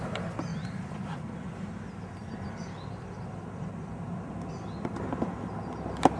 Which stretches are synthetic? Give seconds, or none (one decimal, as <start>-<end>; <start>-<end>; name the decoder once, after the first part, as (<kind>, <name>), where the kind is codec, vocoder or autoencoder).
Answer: 0.5-1.4 (vocoder, BigVGAN v2); 2.2-3.0